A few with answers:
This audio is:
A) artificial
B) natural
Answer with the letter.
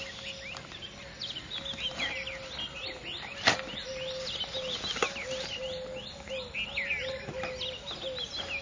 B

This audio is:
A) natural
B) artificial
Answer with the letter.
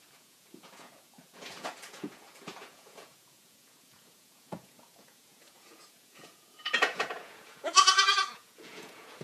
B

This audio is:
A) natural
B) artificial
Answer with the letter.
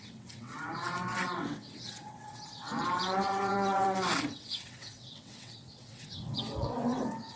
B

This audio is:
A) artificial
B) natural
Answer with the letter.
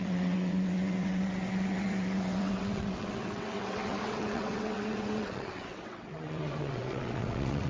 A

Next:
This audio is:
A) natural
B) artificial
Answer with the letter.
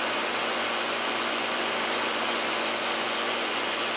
B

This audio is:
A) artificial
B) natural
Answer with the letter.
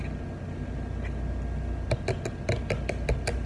B